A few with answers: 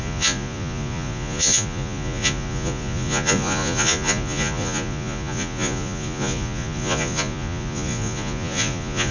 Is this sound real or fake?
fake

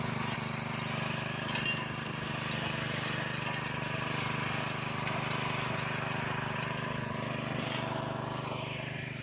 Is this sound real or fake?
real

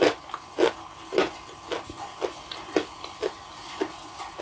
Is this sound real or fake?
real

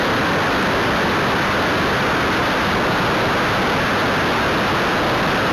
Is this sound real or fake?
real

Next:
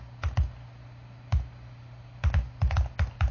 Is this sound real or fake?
real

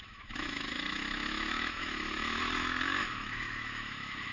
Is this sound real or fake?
fake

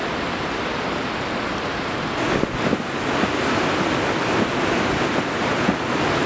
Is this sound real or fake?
real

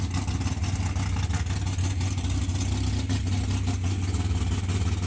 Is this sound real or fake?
real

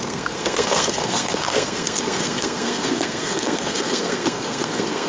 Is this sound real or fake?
fake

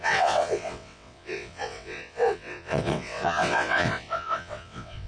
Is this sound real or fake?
fake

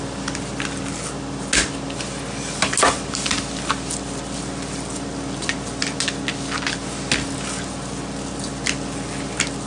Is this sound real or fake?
real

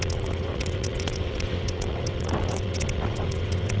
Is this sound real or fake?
fake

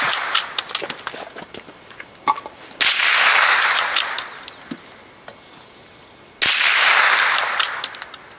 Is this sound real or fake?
real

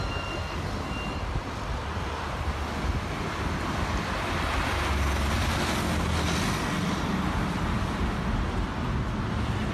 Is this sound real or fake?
real